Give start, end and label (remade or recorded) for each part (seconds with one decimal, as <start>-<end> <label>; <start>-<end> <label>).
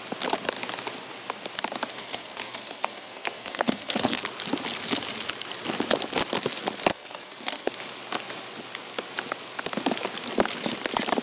0.0-1.9 recorded; 1.9-4.2 remade; 4.2-6.9 recorded; 6.9-7.7 remade; 7.7-11.2 recorded